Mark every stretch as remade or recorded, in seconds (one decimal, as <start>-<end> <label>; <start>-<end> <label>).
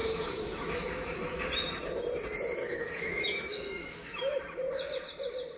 0.0-1.4 remade; 1.4-2.6 recorded; 2.6-4.4 remade; 4.4-5.6 recorded